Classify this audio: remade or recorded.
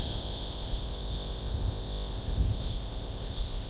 remade